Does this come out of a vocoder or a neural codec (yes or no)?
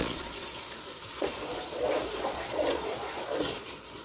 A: yes